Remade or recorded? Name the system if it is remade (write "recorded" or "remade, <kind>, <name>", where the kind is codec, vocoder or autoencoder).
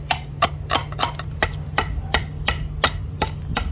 recorded